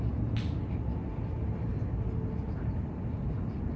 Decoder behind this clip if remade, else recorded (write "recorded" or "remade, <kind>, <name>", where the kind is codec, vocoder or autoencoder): recorded